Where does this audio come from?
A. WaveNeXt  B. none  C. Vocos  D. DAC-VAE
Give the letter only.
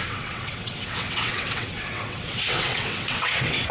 A